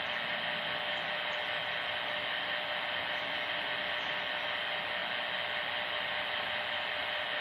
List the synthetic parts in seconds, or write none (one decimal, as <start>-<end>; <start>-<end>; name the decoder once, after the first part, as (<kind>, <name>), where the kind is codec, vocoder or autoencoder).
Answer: none